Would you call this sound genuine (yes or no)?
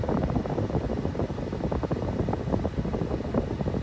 yes